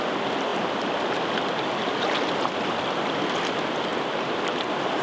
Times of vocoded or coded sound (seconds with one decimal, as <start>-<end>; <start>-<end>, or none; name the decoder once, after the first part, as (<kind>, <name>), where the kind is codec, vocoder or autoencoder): none